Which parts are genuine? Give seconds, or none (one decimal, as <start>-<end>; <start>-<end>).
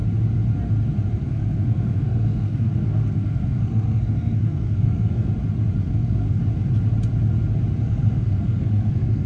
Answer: 0.0-1.2; 5.3-5.8; 6.4-7.8